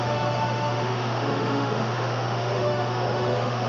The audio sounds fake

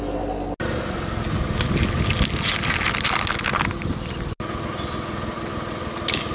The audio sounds real